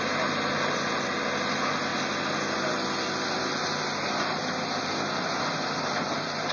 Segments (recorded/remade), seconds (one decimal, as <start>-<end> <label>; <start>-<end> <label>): 0.0-6.5 recorded